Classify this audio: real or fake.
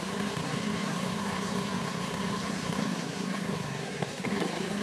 fake